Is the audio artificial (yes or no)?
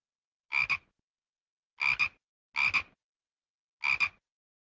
no